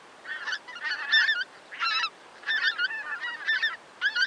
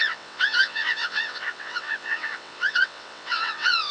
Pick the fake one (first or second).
second